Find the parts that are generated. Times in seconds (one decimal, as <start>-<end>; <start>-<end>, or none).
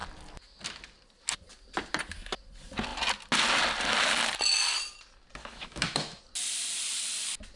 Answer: 5.4-6.2